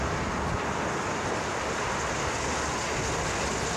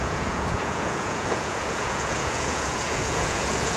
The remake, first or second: second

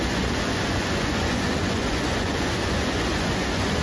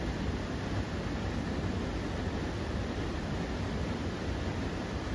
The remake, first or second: first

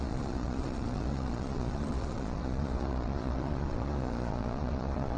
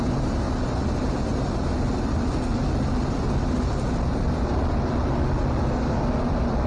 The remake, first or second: first